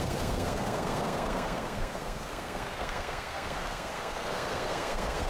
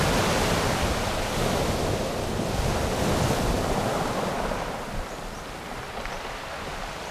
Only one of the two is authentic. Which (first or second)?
second